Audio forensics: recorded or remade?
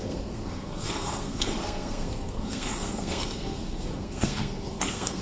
remade